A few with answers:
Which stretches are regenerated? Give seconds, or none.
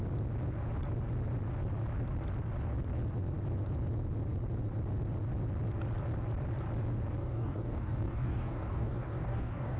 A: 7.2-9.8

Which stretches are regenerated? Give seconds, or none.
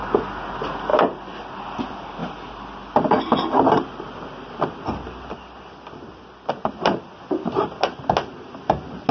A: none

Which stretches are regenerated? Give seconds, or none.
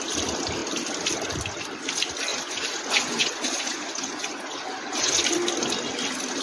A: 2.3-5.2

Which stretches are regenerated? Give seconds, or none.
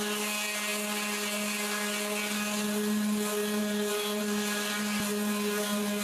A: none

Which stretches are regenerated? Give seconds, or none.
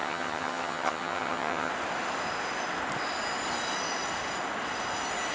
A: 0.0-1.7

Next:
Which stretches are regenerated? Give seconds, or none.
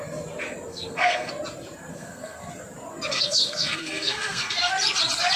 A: 0.7-1.3; 1.9-2.5; 3.1-4.7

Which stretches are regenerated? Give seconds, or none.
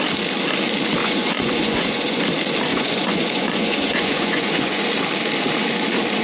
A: 1.0-2.2; 2.7-4.8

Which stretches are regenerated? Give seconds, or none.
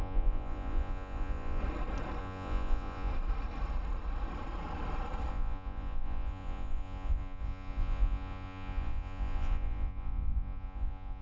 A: 0.0-1.6; 2.2-3.1; 5.3-11.2